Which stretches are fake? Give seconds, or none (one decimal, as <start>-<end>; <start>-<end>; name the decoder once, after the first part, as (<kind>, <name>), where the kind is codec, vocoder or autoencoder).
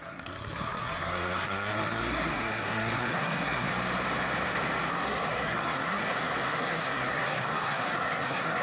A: 0.0-3.7 (codec, SNAC); 4.9-8.6